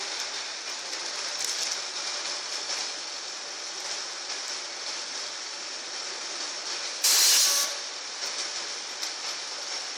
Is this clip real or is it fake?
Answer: real